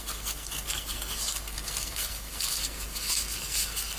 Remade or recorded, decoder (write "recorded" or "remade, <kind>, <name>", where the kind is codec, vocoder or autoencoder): remade, codec, SNAC